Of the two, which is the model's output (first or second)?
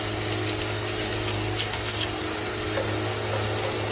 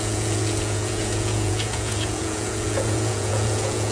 second